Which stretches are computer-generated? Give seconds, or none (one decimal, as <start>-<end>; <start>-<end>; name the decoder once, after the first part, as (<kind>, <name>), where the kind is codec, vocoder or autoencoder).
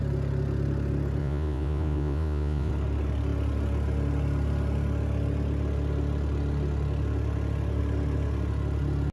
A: 1.2-2.7 (vocoder, Vocos)